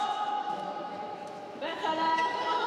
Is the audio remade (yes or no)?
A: yes